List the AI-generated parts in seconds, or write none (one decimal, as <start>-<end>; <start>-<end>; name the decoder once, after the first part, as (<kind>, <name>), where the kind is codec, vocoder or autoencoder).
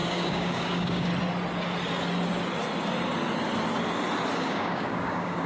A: 0.0-1.1 (codec, DAC); 4.4-5.5